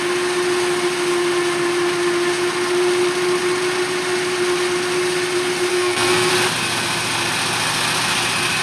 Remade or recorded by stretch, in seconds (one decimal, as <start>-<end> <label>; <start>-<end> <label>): 0.0-5.7 recorded; 5.7-6.3 remade; 6.3-8.6 recorded